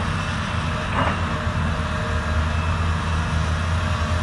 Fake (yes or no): no